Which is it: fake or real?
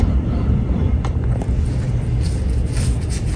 fake